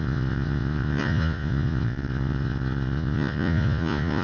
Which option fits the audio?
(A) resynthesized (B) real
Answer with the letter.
A